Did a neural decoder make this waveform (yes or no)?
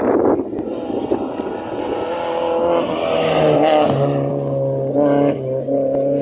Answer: no